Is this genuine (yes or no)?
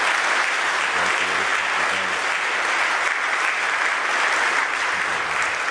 yes